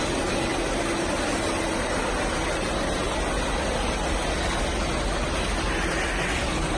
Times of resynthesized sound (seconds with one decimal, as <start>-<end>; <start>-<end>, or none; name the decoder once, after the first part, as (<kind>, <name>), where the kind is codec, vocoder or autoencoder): none